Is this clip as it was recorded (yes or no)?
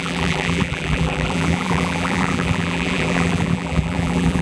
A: no